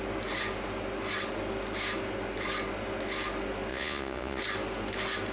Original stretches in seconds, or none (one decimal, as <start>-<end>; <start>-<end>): 0.0-3.7; 4.4-5.3

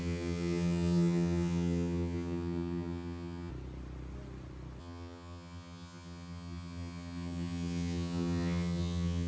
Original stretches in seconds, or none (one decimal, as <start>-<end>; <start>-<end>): 3.5-4.8

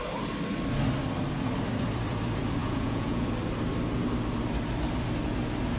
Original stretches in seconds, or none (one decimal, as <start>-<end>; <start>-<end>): 0.0-2.6; 3.3-5.8

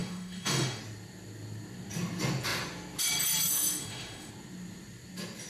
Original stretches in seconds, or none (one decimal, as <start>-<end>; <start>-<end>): 0.8-3.5; 4.3-5.5

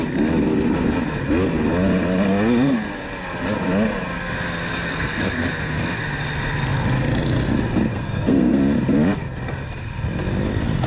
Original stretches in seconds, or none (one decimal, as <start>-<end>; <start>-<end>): 0.0-4.9; 5.5-7.9; 8.6-10.9